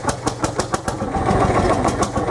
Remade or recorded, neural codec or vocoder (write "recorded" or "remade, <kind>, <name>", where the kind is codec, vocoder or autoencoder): remade, vocoder, Vocos